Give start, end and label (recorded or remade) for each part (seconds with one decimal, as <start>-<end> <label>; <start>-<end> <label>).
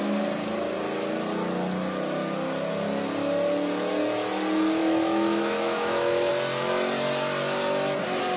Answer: 0.0-4.8 recorded; 4.8-6.3 remade; 6.3-8.4 recorded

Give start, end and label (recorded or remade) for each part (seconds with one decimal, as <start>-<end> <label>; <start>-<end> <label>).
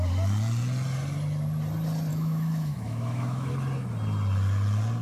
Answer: 0.0-2.1 recorded; 2.1-3.5 remade; 3.5-5.0 recorded